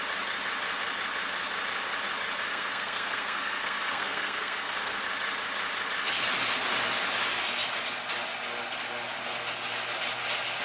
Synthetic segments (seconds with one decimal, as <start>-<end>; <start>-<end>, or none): 2.4-5.0